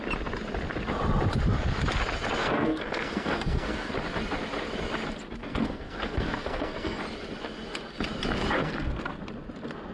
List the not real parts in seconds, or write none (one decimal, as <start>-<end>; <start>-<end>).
2.4-3.9; 5.4-7.0; 8.6-9.2